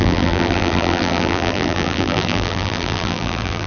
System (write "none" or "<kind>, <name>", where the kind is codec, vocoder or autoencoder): vocoder, BigVGAN v2